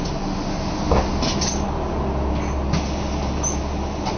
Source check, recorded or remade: recorded